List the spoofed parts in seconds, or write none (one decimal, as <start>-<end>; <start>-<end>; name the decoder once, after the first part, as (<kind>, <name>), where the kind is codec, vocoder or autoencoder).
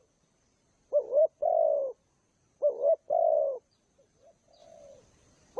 none